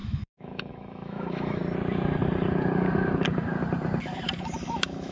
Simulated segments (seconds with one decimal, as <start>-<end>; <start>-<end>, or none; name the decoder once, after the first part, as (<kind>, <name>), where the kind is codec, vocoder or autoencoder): 0.0-1.6 (autoencoder, DAC-VAE); 4.4-5.1